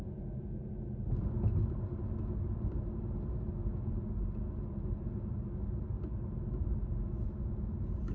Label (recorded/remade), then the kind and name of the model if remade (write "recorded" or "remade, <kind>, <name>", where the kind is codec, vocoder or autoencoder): recorded